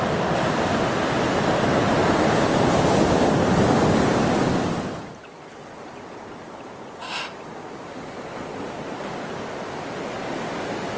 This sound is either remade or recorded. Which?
recorded